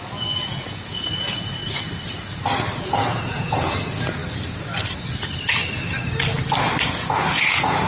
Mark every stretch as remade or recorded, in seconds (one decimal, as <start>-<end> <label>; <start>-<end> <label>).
0.0-1.6 remade; 1.6-2.8 recorded; 2.8-4.2 remade; 4.2-6.8 recorded; 6.8-7.9 remade

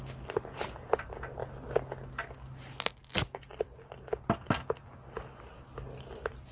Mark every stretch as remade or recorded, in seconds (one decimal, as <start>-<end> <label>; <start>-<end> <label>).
0.0-6.5 recorded

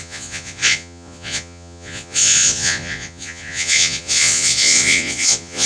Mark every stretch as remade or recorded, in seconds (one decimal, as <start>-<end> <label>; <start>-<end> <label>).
0.0-5.7 remade

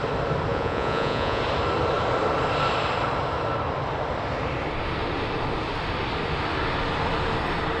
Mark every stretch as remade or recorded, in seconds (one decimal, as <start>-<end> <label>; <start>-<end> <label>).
0.0-0.5 recorded; 0.5-1.4 remade; 1.4-7.8 recorded

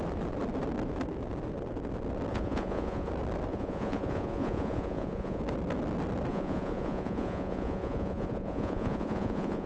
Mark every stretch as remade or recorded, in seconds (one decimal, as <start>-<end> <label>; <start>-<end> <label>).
0.0-2.3 recorded; 2.3-3.1 remade; 3.1-3.5 recorded; 3.5-5.4 remade; 5.4-6.3 recorded; 6.3-9.7 remade